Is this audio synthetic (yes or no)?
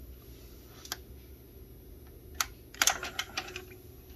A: no